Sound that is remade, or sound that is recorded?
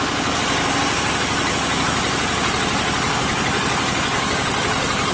recorded